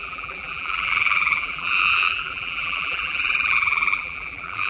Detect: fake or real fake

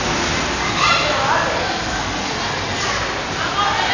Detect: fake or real real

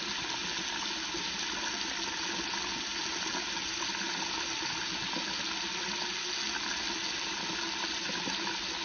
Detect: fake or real real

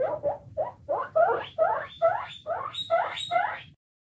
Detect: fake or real fake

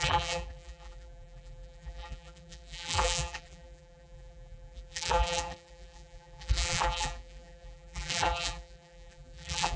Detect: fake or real fake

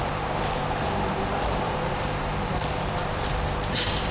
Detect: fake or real fake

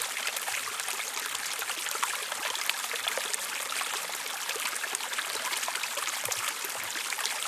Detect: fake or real real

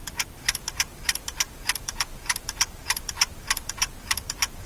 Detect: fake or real fake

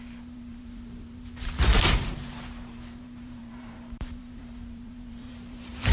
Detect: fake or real fake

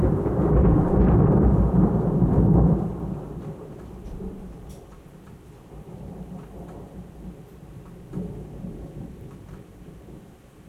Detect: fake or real fake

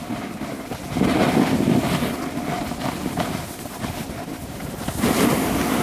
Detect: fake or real real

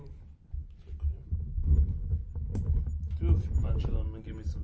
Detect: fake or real fake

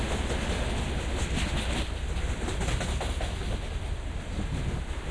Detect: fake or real real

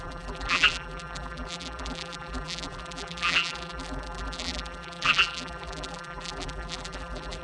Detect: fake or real fake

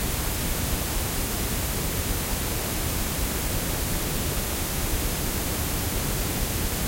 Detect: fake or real fake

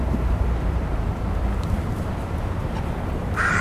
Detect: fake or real fake